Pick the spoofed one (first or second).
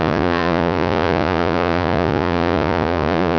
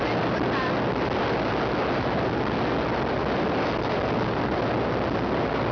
first